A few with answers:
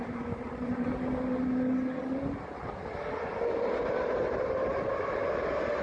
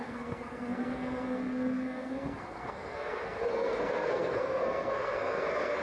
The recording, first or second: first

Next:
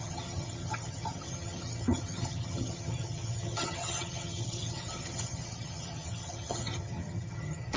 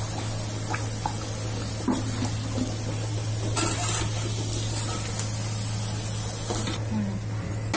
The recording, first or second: second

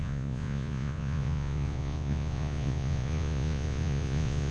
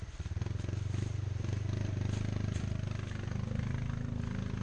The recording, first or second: second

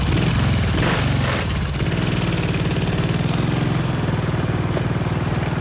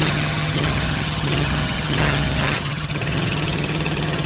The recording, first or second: first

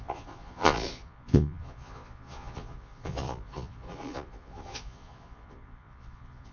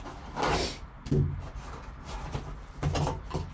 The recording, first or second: second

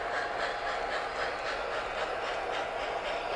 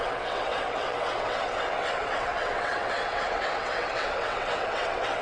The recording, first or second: first